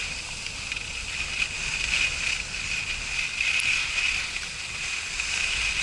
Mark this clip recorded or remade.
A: recorded